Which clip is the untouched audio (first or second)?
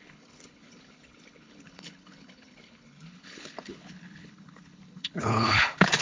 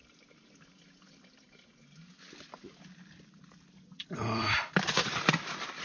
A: second